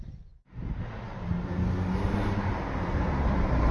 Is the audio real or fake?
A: real